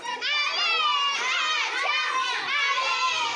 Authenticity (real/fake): real